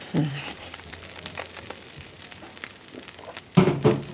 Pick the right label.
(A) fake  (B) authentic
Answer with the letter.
B